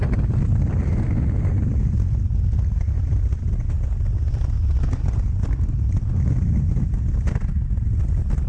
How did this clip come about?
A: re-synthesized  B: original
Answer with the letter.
B